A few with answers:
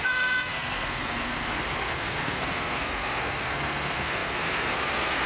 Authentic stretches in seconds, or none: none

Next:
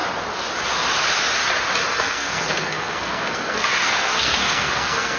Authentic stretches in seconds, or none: 0.0-1.9

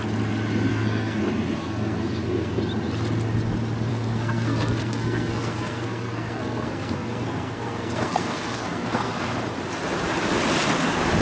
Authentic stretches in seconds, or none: 0.0-0.7; 1.2-1.6; 2.6-3.9; 9.1-11.2